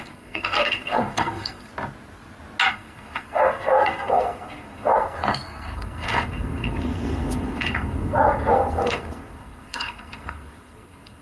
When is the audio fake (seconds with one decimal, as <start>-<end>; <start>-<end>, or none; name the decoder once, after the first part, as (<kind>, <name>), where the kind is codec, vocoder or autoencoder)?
0.0-1.7 (codec, SNAC); 2.7-11.2